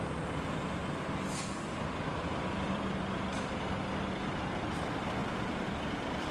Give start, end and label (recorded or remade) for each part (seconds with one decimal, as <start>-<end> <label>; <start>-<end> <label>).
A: 0.0-0.8 recorded; 0.8-3.2 remade; 3.2-5.2 recorded; 5.2-6.3 remade